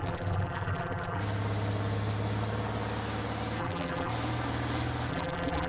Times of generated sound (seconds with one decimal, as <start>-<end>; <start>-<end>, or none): 0.0-1.2; 3.6-4.1; 5.1-5.7